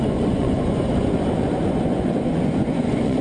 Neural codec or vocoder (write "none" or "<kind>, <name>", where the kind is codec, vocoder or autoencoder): vocoder, Vocos